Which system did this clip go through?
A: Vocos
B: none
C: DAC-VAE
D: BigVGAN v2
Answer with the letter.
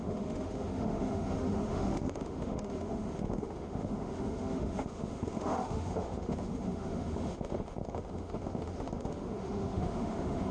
C